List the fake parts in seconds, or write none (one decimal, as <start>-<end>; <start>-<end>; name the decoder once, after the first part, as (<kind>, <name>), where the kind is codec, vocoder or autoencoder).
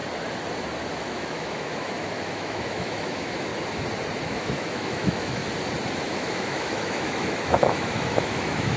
1.0-3.5 (autoencoder, DAC-VAE); 4.3-5.4; 6.0-8.8